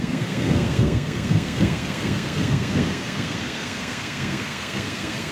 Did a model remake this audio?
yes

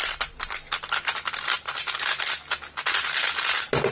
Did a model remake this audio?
no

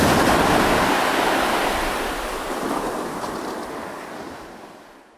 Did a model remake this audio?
no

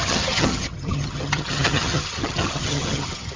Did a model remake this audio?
yes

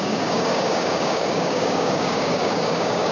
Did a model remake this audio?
yes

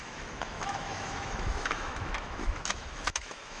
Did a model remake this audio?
yes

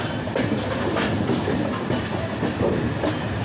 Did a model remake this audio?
no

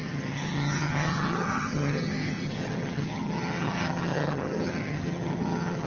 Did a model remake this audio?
yes